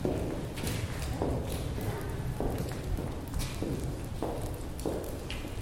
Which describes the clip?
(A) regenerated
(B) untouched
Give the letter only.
B